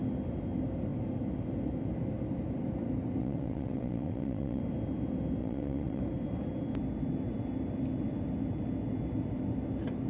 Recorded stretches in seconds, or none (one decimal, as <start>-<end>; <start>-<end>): 0.0-3.2; 4.6-5.4; 6.0-10.1